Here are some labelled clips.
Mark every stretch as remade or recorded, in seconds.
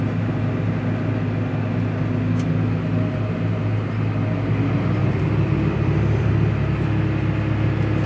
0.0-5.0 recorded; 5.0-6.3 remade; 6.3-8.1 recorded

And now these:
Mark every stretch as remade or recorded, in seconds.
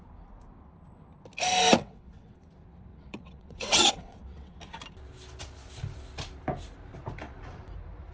0.0-1.8 recorded; 1.8-2.5 remade; 2.5-2.9 recorded; 2.9-4.5 remade; 4.5-8.1 recorded